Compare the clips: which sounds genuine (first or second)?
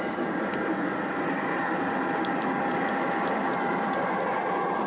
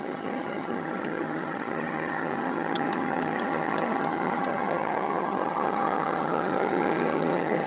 first